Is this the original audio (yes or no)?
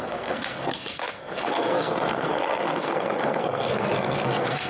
no